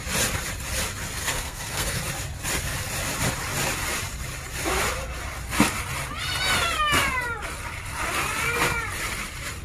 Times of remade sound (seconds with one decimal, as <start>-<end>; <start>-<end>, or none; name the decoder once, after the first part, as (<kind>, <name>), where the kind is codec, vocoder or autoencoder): 1.2-2.0 (codec, SNAC)